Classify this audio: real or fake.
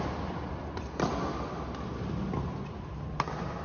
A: real